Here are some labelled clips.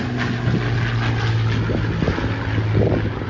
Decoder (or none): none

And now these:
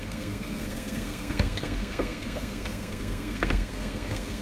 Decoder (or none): codec, SNAC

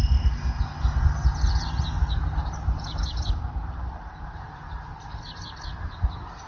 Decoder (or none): none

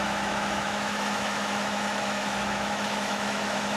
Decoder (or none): autoencoder, DAC-VAE